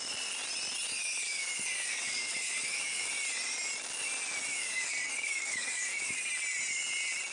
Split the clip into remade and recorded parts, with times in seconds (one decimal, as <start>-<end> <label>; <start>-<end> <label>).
0.0-1.0 recorded; 1.0-3.1 remade; 3.1-4.5 recorded; 4.5-6.3 remade; 6.3-7.3 recorded

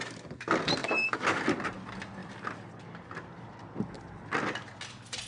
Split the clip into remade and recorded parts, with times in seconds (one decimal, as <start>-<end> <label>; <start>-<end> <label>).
0.0-0.8 recorded; 0.8-1.4 remade; 1.4-5.3 recorded

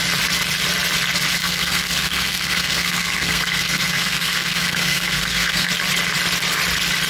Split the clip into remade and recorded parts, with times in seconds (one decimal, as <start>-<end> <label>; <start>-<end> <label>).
0.0-1.4 recorded; 1.4-5.7 remade; 5.7-7.1 recorded

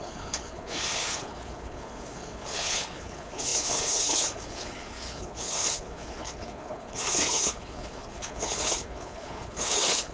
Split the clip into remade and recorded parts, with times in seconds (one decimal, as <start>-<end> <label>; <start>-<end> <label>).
0.0-10.1 remade

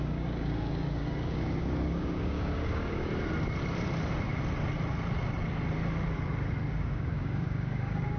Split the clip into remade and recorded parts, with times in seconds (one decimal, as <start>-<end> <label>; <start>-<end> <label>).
0.0-3.1 remade; 3.1-6.7 recorded; 6.7-8.2 remade

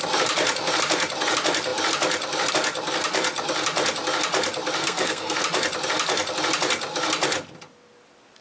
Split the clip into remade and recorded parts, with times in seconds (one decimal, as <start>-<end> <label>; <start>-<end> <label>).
0.0-4.8 recorded; 4.8-5.4 remade; 5.4-8.4 recorded

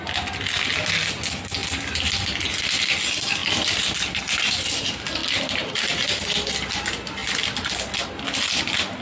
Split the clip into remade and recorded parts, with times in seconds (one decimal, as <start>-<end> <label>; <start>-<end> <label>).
0.0-1.6 recorded; 1.6-2.4 remade; 2.4-3.4 recorded; 3.4-4.2 remade; 4.2-5.2 recorded; 5.2-5.8 remade; 5.8-9.0 recorded

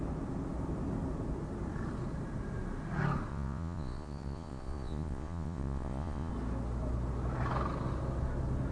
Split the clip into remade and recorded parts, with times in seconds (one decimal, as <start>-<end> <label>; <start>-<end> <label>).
0.0-3.3 recorded; 3.3-6.3 remade; 6.3-8.7 recorded